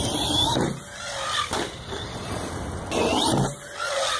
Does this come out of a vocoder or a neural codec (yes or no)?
no